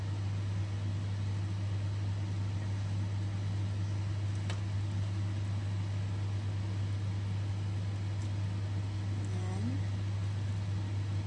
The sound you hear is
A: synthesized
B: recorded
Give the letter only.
B